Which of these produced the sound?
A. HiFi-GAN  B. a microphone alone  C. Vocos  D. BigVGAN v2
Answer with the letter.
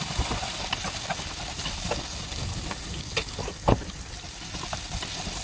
B